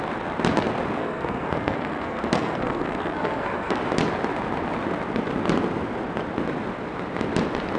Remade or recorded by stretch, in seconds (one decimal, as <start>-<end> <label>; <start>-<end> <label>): 0.0-1.0 recorded; 1.0-3.8 remade; 3.8-7.8 recorded